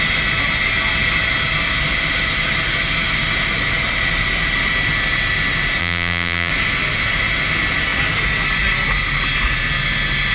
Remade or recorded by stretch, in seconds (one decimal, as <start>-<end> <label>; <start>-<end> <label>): 0.0-5.8 recorded; 5.8-6.5 remade; 6.5-10.3 recorded